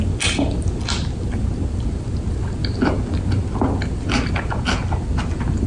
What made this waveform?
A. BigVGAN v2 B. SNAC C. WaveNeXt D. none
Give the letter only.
D